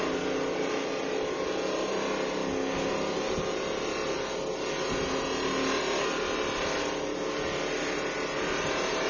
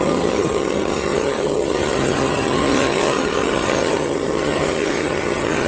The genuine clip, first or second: first